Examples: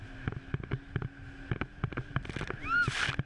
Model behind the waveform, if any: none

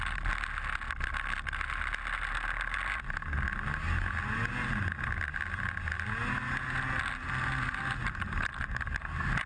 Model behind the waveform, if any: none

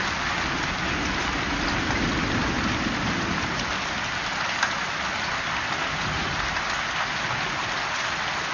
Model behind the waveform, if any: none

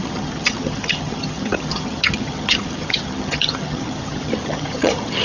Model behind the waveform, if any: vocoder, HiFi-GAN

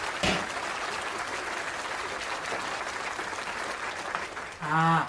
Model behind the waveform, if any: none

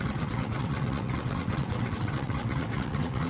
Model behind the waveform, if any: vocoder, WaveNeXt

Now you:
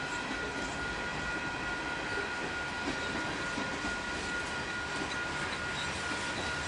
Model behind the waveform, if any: none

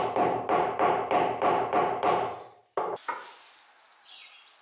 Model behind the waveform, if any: none